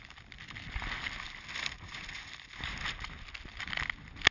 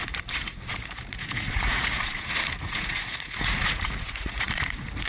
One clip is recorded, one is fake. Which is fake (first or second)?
second